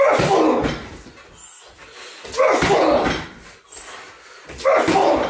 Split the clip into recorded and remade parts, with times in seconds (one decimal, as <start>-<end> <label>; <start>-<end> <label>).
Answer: 0.0-5.3 recorded